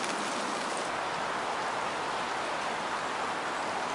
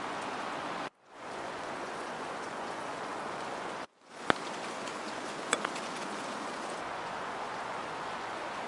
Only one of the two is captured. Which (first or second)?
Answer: first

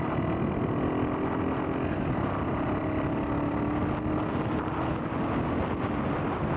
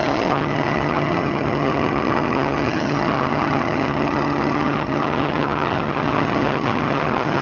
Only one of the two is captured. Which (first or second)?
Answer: first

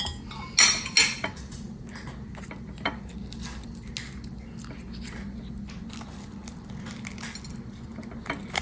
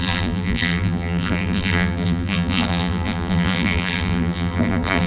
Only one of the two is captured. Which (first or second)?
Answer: first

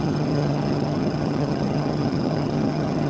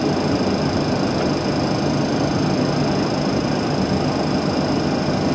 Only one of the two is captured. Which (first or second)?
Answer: second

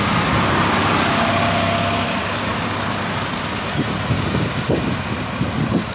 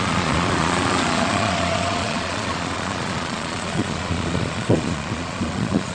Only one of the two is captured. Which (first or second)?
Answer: first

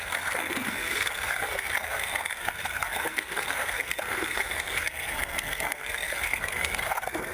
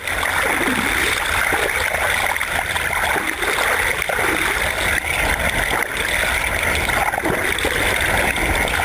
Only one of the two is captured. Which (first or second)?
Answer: second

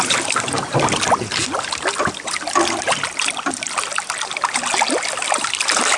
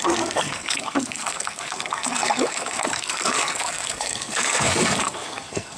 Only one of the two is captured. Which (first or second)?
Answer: first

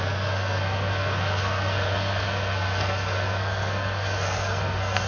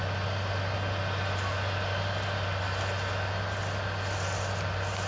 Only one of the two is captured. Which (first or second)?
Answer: second